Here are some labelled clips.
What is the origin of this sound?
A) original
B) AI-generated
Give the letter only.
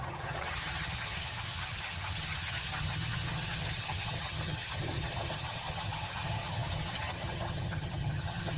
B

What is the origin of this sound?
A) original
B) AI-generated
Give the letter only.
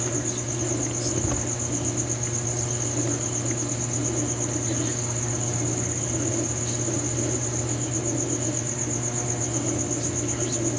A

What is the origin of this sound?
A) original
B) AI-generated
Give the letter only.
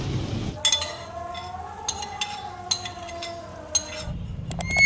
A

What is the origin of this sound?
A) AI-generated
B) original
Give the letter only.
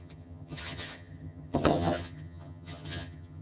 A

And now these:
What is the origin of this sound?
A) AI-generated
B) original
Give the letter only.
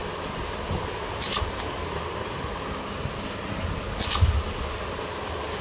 B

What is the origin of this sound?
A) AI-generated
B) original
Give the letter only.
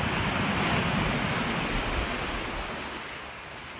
B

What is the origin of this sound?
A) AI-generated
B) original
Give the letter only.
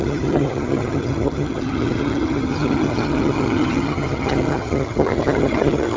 A